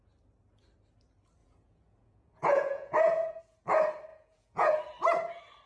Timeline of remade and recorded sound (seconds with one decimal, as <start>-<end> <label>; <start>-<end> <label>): 0.0-1.4 recorded; 1.4-3.4 remade; 3.4-4.1 recorded; 4.1-4.7 remade; 4.7-5.7 recorded

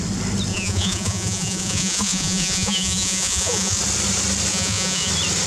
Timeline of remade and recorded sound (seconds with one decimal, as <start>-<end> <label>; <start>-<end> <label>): 0.0-0.5 recorded; 0.5-3.8 remade; 3.8-4.5 recorded; 4.5-5.1 remade; 5.1-5.5 recorded

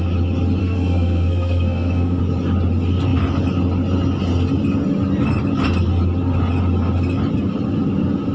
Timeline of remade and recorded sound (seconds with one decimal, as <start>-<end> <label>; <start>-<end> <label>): 0.0-0.6 recorded; 0.6-2.2 remade; 2.2-8.3 recorded

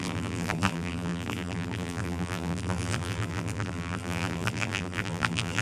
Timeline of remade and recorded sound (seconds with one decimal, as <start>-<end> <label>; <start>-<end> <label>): 0.0-5.6 remade

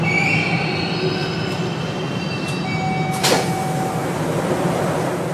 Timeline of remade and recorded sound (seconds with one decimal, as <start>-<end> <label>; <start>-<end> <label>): 0.0-5.3 recorded